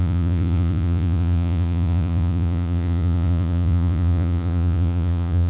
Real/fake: fake